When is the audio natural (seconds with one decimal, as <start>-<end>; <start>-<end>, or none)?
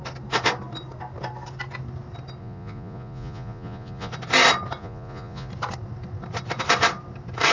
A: 0.0-2.4; 4.1-4.8; 5.5-7.5